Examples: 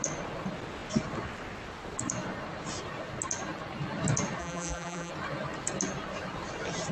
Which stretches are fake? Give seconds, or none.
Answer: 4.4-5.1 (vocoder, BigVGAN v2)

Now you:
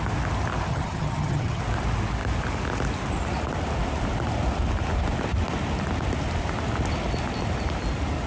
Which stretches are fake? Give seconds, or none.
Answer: 0.7-1.6 (vocoder, HiFi-GAN)

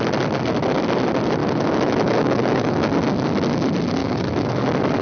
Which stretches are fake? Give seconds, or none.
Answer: 1.4-2.9 (autoencoder, DAC-VAE); 4.0-4.6

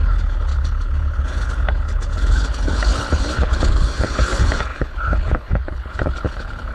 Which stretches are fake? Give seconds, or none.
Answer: 0.0-6.7 (codec, HILCodec)

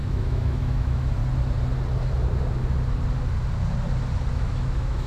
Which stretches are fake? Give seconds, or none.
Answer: 0.0-1.2 (autoencoder, DAC-VAE); 4.3-5.1